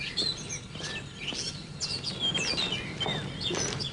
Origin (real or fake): real